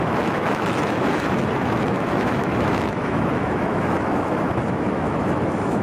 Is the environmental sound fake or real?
fake